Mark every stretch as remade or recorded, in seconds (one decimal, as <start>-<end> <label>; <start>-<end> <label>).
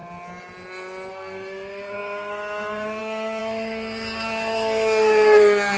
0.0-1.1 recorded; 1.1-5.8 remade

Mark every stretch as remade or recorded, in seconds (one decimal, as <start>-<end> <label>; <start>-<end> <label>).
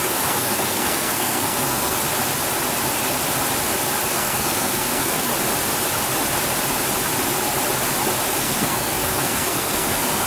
0.0-2.0 remade; 2.0-4.1 recorded; 4.1-5.3 remade; 5.3-8.4 recorded; 8.4-10.3 remade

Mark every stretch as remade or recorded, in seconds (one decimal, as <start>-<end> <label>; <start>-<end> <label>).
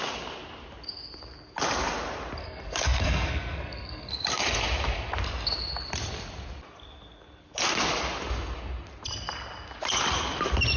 0.0-2.4 recorded; 2.4-4.1 remade; 4.1-10.8 recorded